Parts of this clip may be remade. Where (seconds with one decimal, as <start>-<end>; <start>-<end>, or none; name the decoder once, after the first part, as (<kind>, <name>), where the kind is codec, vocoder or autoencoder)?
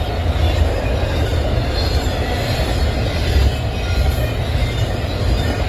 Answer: none